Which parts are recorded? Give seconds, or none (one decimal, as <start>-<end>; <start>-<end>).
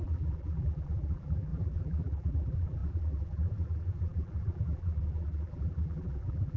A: none